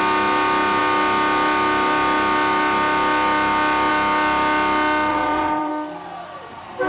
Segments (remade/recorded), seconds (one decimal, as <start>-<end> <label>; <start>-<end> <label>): 0.0-5.1 recorded; 5.1-5.7 remade; 5.7-6.9 recorded